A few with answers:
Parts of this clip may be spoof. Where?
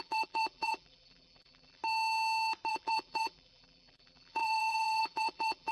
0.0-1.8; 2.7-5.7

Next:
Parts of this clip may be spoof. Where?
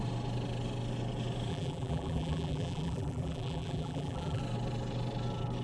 1.5-4.4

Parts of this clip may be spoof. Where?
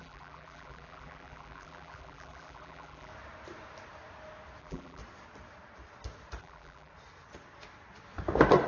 0.0-3.1; 4.6-5.0; 6.4-6.9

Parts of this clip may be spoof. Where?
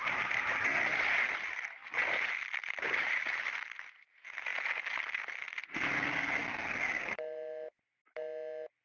none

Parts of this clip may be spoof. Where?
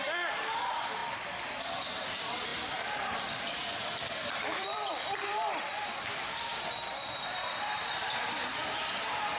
0.0-1.0; 2.1-6.5; 7.9-9.4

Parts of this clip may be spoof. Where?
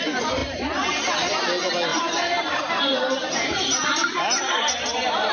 0.4-1.4; 1.9-4.7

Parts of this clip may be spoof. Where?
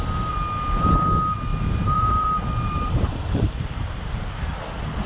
1.5-4.6